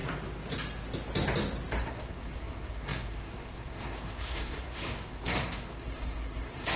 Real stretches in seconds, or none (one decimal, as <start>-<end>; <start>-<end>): 0.0-1.8